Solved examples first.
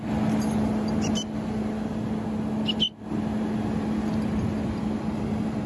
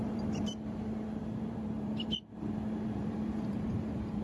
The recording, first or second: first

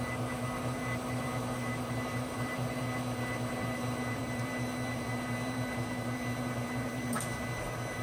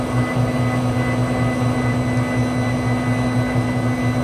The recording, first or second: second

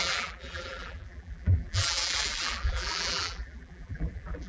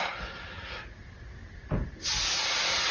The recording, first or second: second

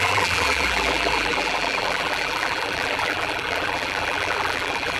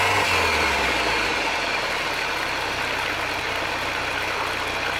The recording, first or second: second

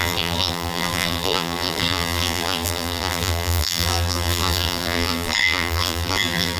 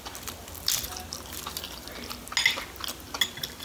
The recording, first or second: second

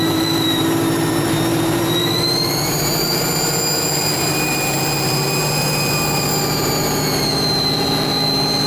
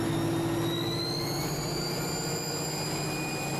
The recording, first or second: second